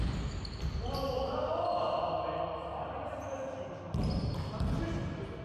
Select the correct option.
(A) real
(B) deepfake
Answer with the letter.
A